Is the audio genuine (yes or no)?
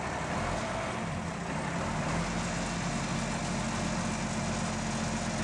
yes